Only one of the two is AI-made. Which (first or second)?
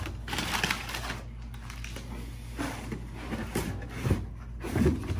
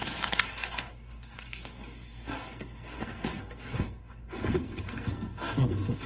second